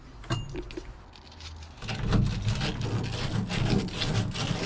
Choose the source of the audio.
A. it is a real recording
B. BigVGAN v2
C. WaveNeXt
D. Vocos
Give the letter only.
A